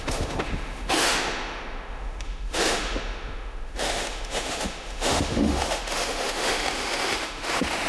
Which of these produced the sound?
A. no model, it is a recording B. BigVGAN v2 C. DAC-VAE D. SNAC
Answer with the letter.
C